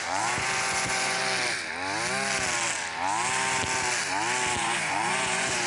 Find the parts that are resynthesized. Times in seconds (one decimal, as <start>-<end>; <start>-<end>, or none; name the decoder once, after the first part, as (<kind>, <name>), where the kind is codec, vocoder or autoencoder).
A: 0.0-1.2 (vocoder, Vocos); 4.6-5.7